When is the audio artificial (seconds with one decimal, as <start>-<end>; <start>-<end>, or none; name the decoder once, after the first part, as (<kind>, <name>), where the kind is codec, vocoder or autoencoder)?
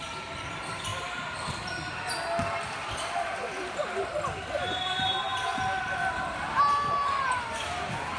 none